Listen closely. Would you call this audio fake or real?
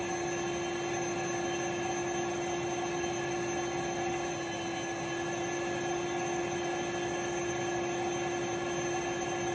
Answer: real